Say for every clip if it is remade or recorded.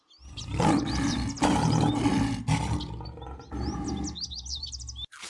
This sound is recorded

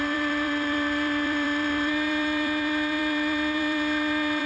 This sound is remade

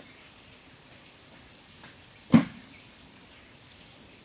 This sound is recorded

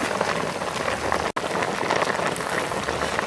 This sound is recorded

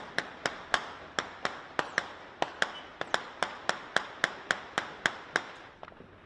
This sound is recorded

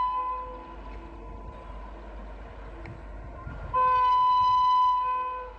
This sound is recorded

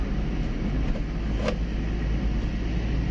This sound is recorded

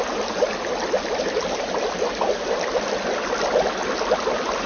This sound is recorded